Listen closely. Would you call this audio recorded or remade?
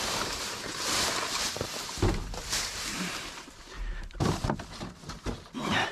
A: remade